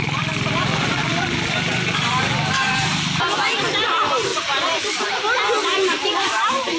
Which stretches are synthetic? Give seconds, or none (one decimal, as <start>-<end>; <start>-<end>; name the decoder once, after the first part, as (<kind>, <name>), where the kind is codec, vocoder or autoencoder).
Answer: 0.0-1.0 (vocoder, BigVGAN v2); 4.3-5.1; 6.0-6.8